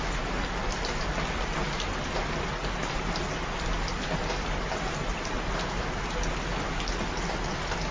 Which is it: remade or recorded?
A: recorded